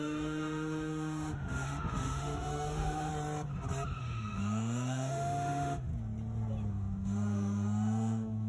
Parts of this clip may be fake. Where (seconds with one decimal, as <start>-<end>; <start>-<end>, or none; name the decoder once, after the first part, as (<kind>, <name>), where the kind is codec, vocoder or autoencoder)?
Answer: 0.0-3.1 (autoencoder, DAC-VAE); 4.0-5.9; 6.7-8.5